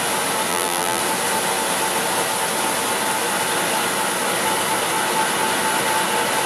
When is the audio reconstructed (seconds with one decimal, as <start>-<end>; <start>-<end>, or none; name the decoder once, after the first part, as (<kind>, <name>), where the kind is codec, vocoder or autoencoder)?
0.5-1.0 (vocoder, BigVGAN v2)